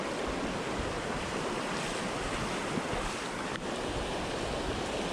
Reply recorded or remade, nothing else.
recorded